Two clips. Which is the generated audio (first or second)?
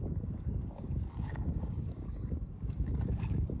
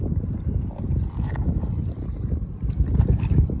first